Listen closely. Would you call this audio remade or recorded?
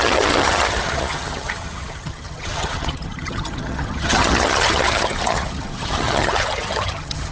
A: remade